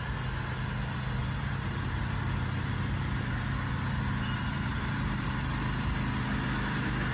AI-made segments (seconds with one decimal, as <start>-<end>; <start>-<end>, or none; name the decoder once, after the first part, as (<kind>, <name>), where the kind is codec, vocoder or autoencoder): 1.2-5.5 (vocoder, BigVGAN v2)